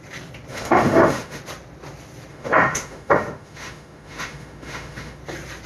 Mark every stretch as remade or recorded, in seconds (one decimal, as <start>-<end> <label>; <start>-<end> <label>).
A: 0.0-0.5 recorded; 0.5-1.4 remade; 1.4-2.3 recorded; 2.3-5.2 remade; 5.2-5.7 recorded